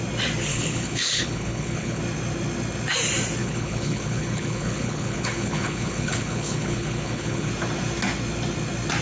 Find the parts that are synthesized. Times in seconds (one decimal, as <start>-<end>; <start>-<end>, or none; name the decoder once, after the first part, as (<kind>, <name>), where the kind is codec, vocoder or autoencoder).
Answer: 0.5-2.0 (codec, HILCodec); 3.4-7.5

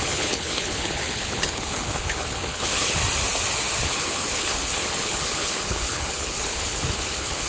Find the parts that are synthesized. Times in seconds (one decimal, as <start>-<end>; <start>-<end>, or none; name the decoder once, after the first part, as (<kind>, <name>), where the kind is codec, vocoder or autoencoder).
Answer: 0.0-3.0 (codec, HILCodec); 3.8-7.5